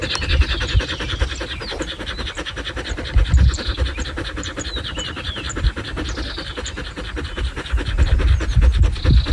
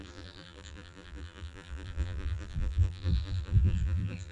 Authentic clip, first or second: first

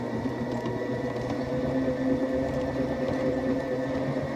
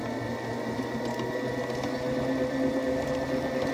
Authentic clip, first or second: second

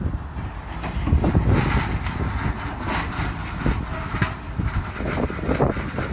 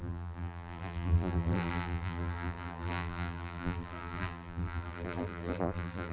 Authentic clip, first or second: first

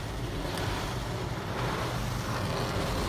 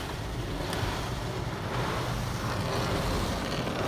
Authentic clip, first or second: first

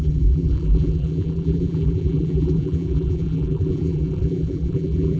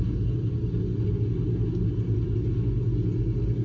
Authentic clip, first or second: second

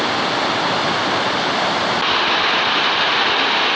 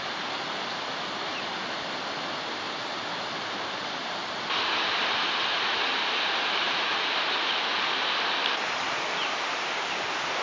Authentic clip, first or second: first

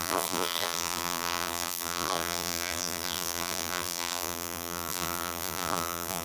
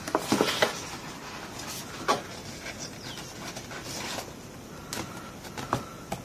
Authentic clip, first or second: second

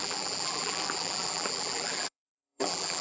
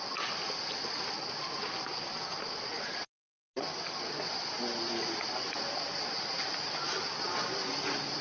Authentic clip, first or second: second